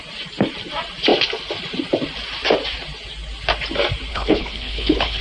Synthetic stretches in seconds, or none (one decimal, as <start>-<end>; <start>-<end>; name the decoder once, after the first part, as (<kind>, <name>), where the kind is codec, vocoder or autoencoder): 4.1-5.2 (codec, HILCodec)